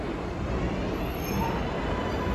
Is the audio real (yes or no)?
yes